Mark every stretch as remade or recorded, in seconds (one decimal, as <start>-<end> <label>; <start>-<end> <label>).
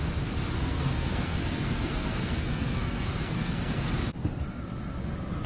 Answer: 0.0-0.6 recorded; 0.6-3.9 remade; 3.9-5.5 recorded